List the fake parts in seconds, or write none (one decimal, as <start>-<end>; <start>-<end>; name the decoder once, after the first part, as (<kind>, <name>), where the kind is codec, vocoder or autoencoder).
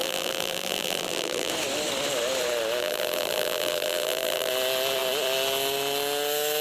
0.0-1.5 (vocoder, BigVGAN v2); 2.8-4.5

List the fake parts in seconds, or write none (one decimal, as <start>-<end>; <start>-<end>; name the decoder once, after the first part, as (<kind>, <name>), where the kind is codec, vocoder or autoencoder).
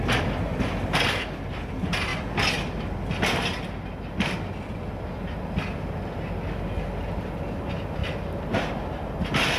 none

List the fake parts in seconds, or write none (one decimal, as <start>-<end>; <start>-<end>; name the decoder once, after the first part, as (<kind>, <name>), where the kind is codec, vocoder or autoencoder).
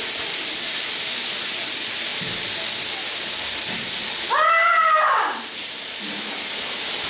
none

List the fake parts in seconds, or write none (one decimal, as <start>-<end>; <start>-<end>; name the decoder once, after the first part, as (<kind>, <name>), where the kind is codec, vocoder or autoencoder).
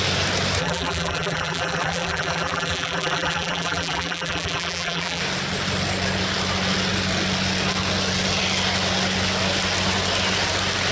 0.6-5.2 (vocoder, BigVGAN v2)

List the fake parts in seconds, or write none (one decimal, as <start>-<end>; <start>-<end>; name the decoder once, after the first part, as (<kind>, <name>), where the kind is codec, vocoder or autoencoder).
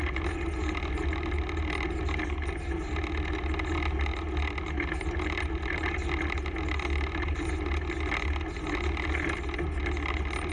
none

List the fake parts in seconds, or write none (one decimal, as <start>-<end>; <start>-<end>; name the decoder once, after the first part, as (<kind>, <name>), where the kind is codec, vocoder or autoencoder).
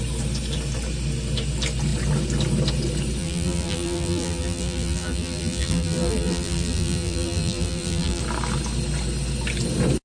3.2-8.2 (vocoder, BigVGAN v2)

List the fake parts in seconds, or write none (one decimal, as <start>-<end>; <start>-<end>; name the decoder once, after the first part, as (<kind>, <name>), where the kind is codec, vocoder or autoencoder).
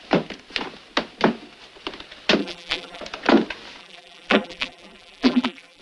2.4-3.0 (vocoder, BigVGAN v2); 3.8-5.8